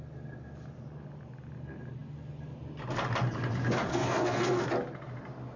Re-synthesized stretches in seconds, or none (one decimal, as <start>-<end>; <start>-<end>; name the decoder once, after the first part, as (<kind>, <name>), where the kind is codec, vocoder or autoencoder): 3.9-4.7 (codec, SNAC)